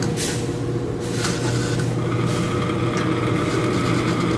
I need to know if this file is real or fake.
real